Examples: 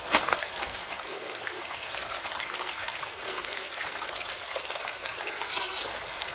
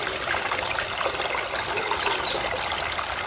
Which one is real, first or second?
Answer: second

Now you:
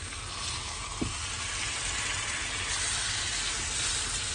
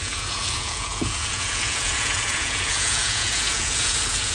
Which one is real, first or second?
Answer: first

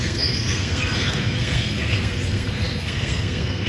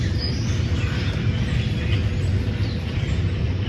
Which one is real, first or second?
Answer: second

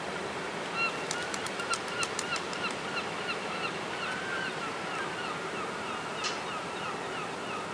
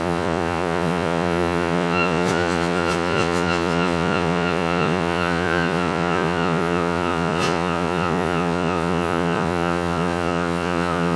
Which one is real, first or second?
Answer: first